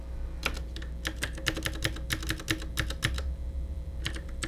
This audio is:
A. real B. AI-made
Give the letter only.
A